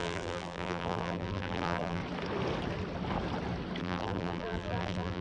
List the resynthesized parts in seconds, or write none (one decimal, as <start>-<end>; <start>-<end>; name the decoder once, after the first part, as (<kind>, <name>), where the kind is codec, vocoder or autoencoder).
0.0-2.0 (vocoder, BigVGAN v2); 3.8-5.2